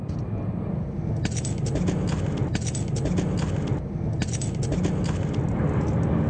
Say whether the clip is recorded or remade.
recorded